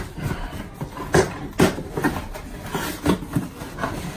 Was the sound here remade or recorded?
recorded